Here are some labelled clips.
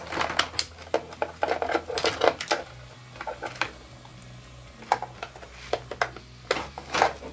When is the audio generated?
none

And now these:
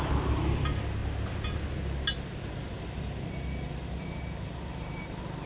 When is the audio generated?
none

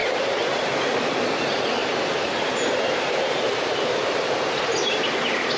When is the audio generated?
0.0-0.7; 1.8-5.6

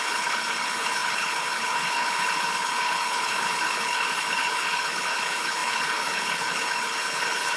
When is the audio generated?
0.0-7.6

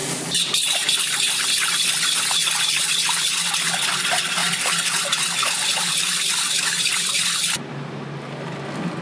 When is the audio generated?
none

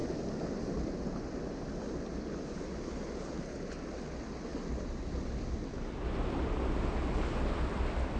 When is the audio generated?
none

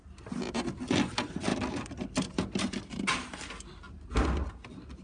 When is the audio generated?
none